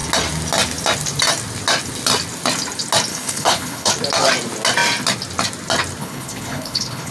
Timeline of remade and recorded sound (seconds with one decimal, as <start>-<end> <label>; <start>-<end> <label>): 0.0-3.1 recorded; 3.1-3.9 remade; 3.9-6.0 recorded; 6.0-7.1 remade